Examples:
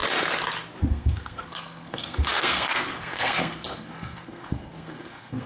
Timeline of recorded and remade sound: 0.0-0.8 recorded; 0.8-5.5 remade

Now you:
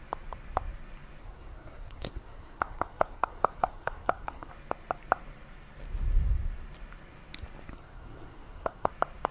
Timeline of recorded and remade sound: 0.0-1.2 recorded; 1.2-4.5 remade; 4.5-7.7 recorded; 7.7-8.9 remade; 8.9-9.3 recorded

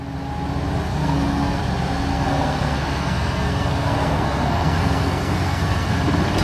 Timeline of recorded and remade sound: 0.0-0.9 recorded; 0.9-1.6 remade; 1.6-2.1 recorded; 2.1-5.9 remade; 5.9-6.4 recorded

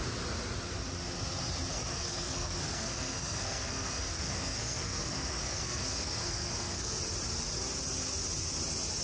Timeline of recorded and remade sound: 0.0-1.7 recorded; 1.7-7.0 remade; 7.0-9.0 recorded

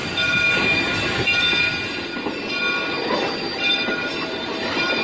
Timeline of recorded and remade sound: 0.0-5.0 recorded

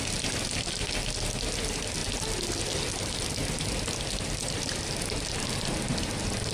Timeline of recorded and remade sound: 0.0-6.5 recorded

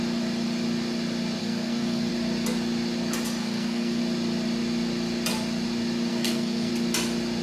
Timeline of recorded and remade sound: 0.0-1.4 recorded; 1.4-2.1 remade; 2.1-3.4 recorded; 3.4-4.0 remade; 4.0-6.1 recorded; 6.1-6.7 remade; 6.7-7.4 recorded